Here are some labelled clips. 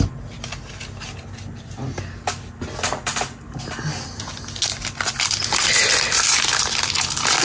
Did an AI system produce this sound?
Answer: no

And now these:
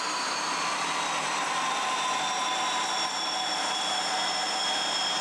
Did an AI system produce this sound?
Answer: no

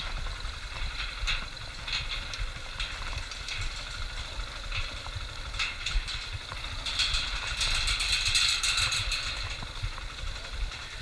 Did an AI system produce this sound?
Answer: yes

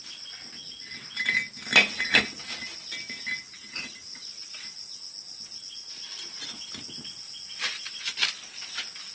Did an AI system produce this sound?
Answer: no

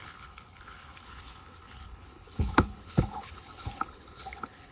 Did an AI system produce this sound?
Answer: yes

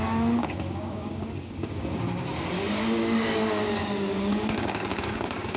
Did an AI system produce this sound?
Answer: yes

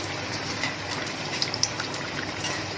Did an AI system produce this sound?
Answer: yes